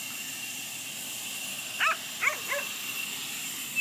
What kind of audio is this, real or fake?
fake